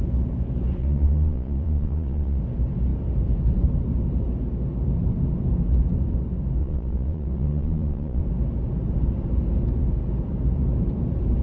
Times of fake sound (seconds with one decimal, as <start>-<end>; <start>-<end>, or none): 0.8-2.4; 6.6-8.2